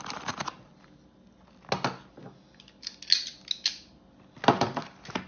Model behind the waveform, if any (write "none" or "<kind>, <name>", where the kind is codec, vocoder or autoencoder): none